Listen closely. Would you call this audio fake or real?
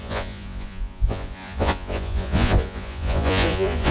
fake